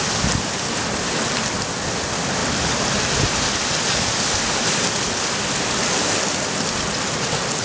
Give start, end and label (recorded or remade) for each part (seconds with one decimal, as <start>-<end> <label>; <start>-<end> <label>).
0.0-7.6 recorded